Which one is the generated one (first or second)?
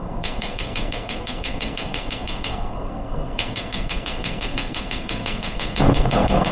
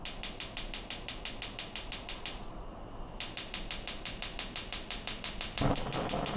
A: first